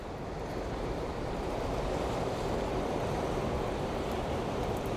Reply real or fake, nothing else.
real